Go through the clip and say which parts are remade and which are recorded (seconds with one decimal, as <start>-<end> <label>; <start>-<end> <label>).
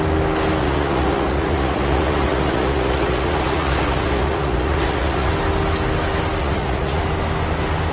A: 0.0-0.6 recorded; 0.6-5.3 remade; 5.3-6.4 recorded; 6.4-7.0 remade; 7.0-7.9 recorded